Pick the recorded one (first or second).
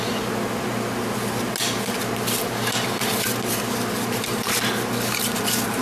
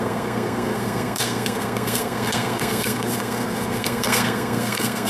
first